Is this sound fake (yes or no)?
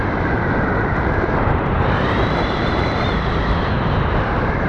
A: yes